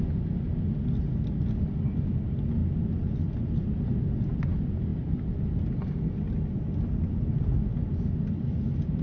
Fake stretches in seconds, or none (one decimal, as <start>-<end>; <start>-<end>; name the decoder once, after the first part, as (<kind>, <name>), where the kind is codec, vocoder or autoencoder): none